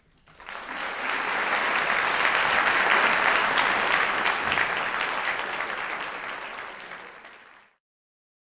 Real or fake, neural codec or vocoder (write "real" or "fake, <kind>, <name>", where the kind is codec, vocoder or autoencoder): real